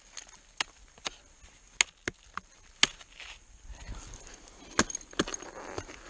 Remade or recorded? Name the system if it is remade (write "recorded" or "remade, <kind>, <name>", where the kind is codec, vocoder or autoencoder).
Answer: recorded